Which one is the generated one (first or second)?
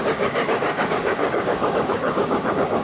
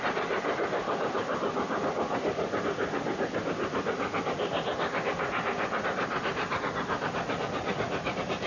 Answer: first